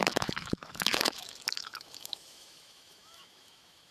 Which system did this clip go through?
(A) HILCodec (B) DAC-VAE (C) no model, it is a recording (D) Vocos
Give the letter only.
B